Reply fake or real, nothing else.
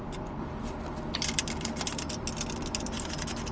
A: real